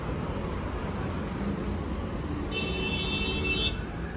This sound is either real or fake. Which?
real